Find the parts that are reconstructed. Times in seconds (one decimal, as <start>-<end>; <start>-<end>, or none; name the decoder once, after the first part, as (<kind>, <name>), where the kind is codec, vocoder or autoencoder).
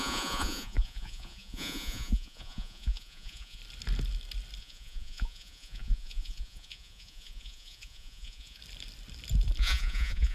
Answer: 0.0-3.6 (vocoder, Vocos); 4.6-8.6; 9.6-10.3